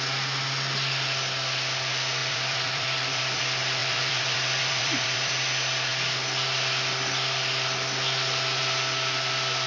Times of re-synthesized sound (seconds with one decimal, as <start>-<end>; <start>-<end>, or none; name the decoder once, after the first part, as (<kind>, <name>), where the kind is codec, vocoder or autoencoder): 2.2-3.4 (vocoder, BigVGAN v2); 3.8-5.3